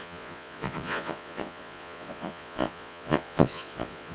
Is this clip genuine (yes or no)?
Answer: no